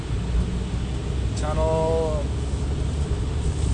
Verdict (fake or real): real